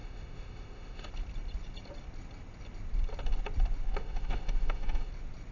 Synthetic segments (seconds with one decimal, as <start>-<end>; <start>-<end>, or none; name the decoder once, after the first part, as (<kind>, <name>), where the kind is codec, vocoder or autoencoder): 0.0-1.1 (autoencoder, DAC-VAE); 4.0-5.1